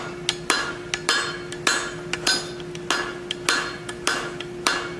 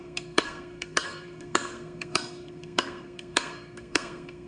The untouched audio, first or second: first